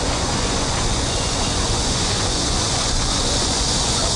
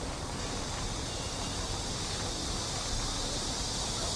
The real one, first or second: second